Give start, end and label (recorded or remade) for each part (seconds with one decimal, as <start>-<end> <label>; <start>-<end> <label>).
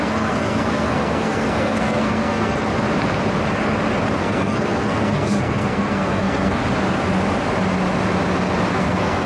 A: 0.0-2.7 remade; 2.7-4.2 recorded; 4.2-6.6 remade; 6.6-8.7 recorded; 8.7-9.3 remade